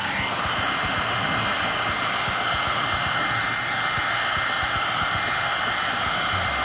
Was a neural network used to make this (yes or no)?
no